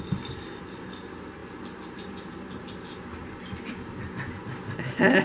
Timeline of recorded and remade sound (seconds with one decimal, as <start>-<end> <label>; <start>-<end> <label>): 0.0-5.2 recorded